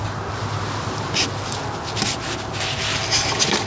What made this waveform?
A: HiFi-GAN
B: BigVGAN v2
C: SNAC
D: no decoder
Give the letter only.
D